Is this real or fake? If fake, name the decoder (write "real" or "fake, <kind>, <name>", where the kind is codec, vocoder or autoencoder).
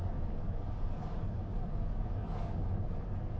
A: fake, codec, DAC